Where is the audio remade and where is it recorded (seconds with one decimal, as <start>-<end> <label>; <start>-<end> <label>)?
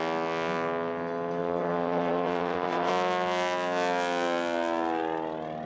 0.0-1.4 recorded; 1.4-2.9 remade; 2.9-5.7 recorded